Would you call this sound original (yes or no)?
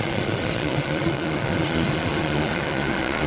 no